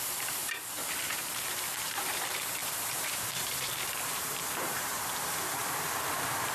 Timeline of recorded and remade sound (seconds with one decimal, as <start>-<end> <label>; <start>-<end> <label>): 0.0-0.4 remade; 0.4-1.0 recorded; 1.0-5.6 remade; 5.6-6.1 recorded; 6.1-6.5 remade